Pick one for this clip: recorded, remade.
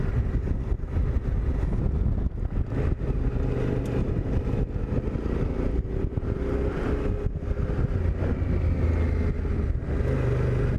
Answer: recorded